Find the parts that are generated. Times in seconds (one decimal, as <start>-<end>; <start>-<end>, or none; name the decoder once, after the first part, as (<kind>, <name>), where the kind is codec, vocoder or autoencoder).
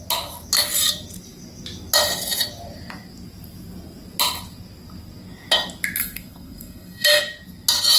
6.0-7.2 (codec, SNAC)